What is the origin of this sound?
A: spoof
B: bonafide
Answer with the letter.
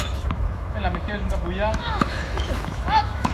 A